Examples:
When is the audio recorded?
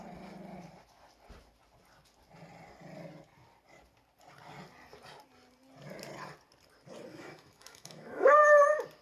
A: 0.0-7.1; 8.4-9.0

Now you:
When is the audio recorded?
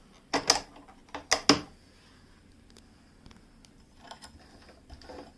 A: 0.0-5.4